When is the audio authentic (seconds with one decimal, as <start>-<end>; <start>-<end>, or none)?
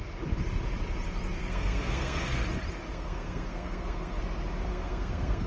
0.0-1.4; 2.4-2.9; 4.2-4.7